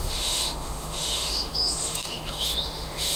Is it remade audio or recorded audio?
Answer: remade